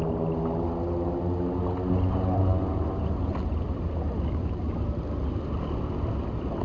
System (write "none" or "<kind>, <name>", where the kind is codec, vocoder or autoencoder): none